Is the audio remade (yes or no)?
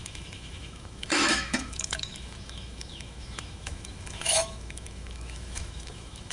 yes